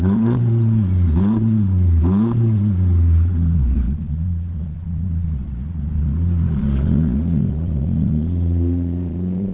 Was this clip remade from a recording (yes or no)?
yes